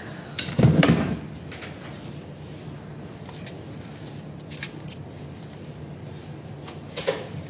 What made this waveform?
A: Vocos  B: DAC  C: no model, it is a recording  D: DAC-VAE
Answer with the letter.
C